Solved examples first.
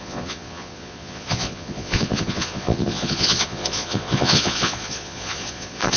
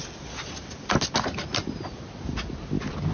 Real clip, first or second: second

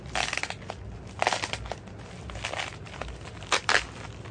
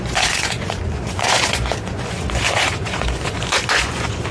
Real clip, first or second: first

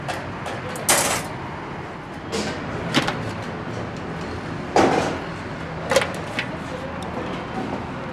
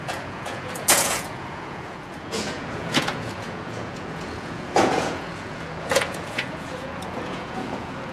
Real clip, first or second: first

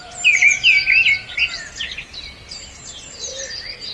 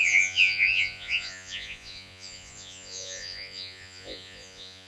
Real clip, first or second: first